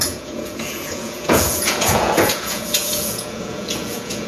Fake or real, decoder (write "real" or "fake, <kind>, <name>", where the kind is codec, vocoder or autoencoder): fake, vocoder, Vocos